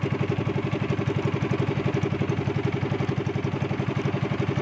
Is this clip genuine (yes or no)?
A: yes